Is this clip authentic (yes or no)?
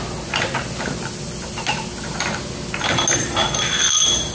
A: yes